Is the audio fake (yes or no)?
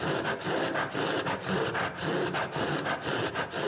yes